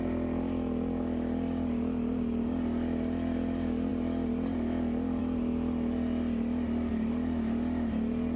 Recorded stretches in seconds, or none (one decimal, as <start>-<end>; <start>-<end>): 0.0-8.4